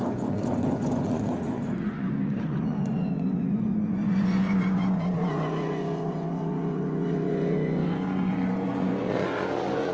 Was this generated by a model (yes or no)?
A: yes